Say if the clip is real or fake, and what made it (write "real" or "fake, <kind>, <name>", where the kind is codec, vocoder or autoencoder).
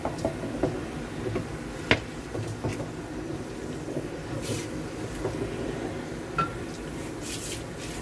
real